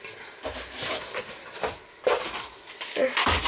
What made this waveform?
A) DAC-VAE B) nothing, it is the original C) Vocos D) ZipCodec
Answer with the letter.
B